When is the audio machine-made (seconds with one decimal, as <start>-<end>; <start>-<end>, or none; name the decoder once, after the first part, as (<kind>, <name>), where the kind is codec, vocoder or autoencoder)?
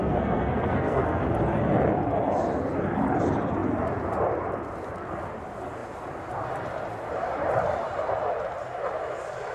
0.0-1.3 (codec, SNAC)